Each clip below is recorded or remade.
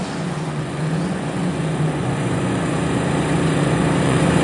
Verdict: remade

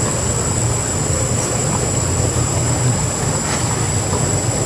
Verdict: recorded